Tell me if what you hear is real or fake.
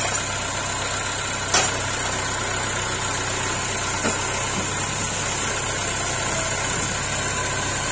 real